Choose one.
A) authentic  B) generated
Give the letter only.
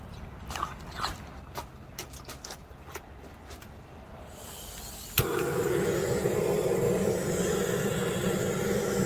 A